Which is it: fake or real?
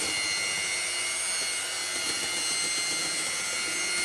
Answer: real